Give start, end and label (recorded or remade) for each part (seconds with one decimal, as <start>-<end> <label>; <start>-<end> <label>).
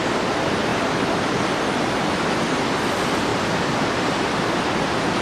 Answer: 0.0-5.2 recorded